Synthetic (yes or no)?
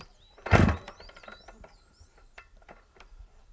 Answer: yes